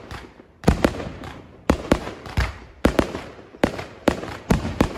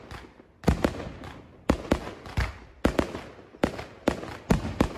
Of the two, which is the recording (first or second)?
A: second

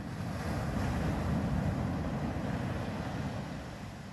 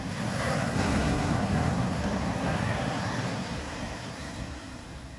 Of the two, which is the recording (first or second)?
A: first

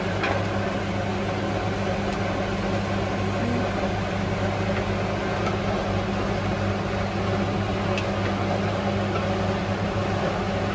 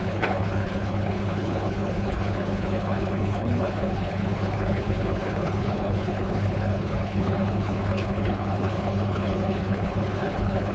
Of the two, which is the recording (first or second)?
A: first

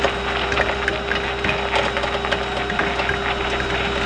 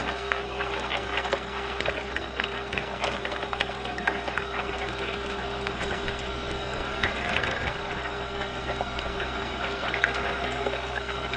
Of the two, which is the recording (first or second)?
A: first